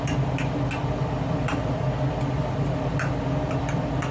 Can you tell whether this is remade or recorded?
recorded